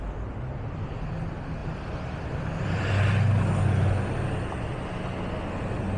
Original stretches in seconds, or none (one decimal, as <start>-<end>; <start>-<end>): 0.0-1.6; 2.9-6.0